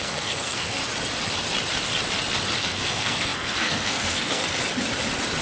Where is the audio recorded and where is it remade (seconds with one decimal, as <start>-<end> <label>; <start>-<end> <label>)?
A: 0.0-0.8 remade; 0.8-2.6 recorded; 2.6-4.4 remade; 4.4-5.4 recorded